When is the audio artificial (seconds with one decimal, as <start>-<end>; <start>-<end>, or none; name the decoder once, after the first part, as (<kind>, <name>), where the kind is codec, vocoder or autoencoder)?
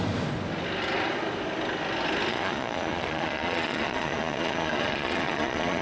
2.3-5.8 (vocoder, Vocos)